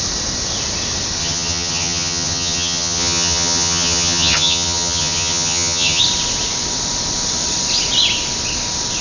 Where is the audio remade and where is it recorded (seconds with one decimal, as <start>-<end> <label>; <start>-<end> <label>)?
0.0-1.2 recorded; 1.2-6.0 remade; 6.0-9.0 recorded